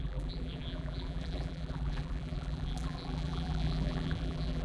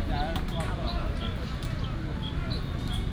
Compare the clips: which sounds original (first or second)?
second